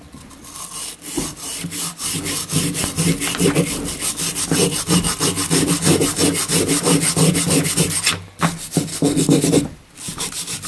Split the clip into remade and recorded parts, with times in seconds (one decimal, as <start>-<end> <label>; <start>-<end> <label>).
0.0-8.9 recorded; 8.9-9.4 remade; 9.4-10.7 recorded